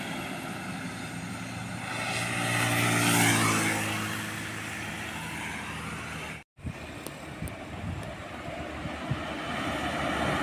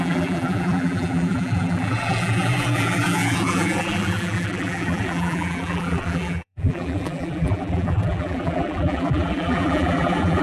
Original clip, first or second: first